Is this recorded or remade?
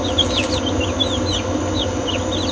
recorded